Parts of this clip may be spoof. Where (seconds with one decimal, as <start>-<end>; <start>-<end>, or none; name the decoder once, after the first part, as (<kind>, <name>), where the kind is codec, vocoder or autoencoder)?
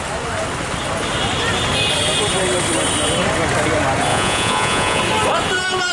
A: 4.1-5.0 (vocoder, Vocos)